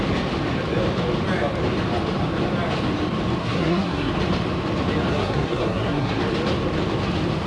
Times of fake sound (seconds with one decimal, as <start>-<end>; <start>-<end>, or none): 3.4-4.1; 5.1-6.2